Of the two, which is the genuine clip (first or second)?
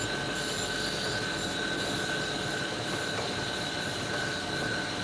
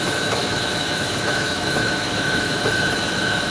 first